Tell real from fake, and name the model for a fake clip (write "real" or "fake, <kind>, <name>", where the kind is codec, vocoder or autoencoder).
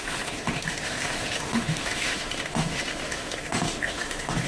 fake, autoencoder, DAC-VAE